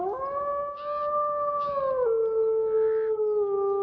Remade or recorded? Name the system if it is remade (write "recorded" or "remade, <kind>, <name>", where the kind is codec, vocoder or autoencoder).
recorded